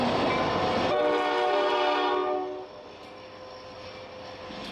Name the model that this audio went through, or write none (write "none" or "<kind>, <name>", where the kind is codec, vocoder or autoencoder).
none